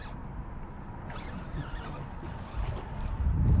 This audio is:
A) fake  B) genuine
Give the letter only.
B